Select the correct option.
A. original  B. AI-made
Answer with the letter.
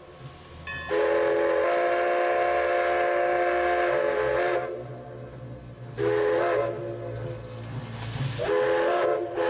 A